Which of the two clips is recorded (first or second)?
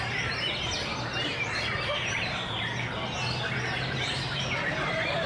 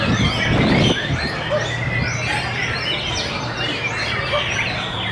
second